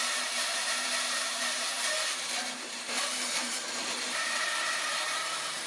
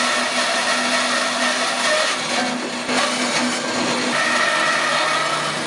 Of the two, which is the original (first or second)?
second